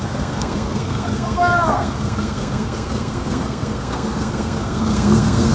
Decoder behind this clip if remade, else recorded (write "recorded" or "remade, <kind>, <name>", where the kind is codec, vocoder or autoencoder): remade, codec, SNAC